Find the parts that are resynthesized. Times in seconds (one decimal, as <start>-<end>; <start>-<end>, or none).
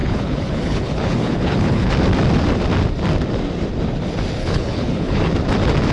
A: 0.0-1.9; 4.4-5.3